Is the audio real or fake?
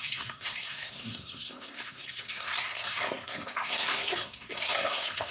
fake